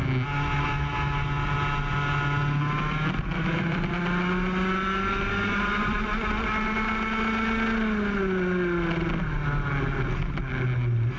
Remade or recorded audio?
recorded